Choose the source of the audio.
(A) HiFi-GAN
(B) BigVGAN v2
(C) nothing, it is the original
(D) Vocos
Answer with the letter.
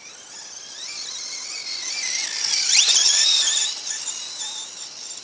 C